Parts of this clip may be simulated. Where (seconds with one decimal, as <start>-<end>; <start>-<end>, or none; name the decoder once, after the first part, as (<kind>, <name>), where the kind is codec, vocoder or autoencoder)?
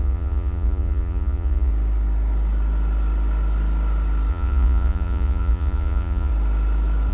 0.0-1.7 (vocoder, Vocos); 4.3-6.3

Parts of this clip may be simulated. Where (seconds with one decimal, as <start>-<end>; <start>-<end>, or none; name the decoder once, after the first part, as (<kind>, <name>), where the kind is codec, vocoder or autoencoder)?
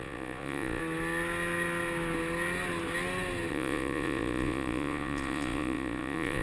0.0-0.8 (vocoder, Vocos); 3.5-6.4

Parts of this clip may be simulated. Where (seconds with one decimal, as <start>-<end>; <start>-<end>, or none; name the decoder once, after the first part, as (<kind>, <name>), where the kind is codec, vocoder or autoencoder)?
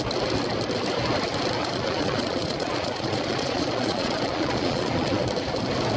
1.6-5.2 (vocoder, Vocos)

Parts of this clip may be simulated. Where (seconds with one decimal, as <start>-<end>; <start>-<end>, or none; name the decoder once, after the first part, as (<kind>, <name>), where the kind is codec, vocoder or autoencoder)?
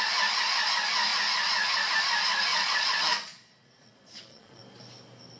2.5-4.6 (vocoder, Vocos)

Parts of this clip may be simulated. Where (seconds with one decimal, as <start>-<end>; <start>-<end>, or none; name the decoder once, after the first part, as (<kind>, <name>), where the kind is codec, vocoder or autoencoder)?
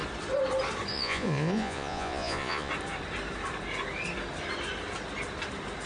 0.9-2.7 (vocoder, Vocos)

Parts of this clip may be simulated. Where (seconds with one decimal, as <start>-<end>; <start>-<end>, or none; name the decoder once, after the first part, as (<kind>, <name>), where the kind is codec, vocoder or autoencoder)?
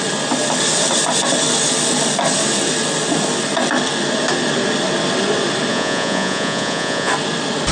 5.7-7.1 (vocoder, Vocos)